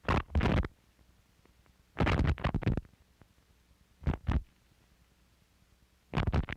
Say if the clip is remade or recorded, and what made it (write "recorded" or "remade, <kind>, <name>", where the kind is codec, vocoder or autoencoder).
recorded